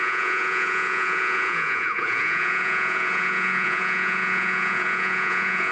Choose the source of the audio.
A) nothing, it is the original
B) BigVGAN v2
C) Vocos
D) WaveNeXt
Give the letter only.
C